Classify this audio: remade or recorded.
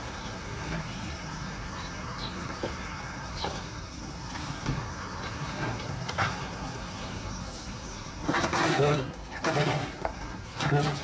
remade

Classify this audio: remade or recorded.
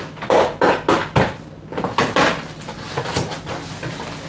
recorded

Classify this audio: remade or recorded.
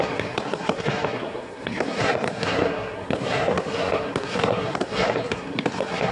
remade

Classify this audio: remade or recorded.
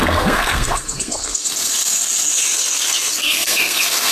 remade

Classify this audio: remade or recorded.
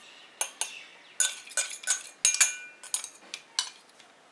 recorded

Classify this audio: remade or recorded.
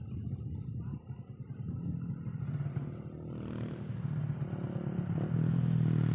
recorded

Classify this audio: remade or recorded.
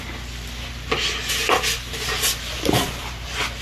recorded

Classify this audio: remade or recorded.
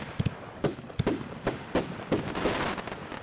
recorded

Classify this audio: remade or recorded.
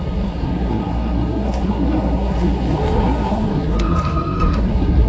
remade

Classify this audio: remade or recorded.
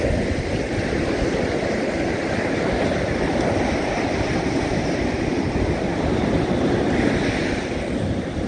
recorded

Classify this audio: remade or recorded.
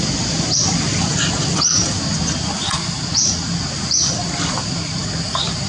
recorded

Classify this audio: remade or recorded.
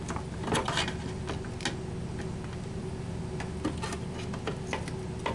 recorded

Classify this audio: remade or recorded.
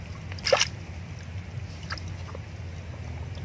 recorded